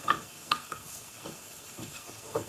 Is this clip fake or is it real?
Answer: fake